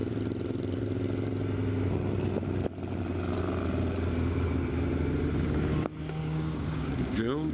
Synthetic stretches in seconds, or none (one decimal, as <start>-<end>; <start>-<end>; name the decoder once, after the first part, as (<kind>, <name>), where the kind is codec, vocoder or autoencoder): 6.2-7.5 (codec, DAC)